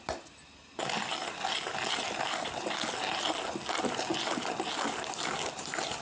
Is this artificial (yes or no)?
no